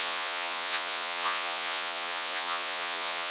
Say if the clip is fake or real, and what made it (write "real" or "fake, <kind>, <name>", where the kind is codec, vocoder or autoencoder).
fake, vocoder, Vocos